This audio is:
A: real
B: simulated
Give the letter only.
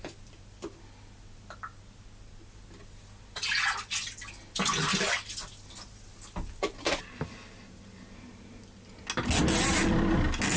A